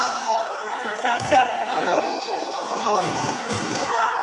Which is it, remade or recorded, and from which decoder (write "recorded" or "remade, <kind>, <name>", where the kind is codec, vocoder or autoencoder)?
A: remade, codec, SNAC